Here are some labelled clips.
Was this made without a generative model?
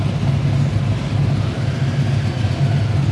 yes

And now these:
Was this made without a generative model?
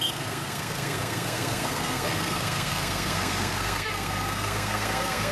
no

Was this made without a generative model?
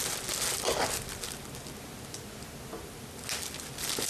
yes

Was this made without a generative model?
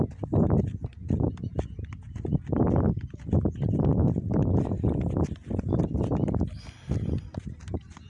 yes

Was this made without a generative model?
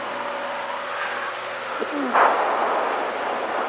yes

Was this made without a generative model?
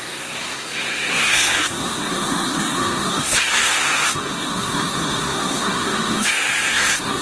no